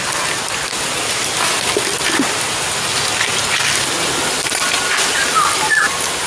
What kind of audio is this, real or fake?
real